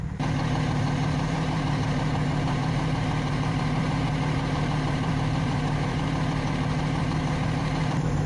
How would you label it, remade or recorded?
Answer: remade